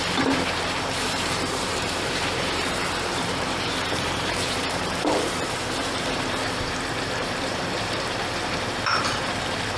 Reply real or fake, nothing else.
fake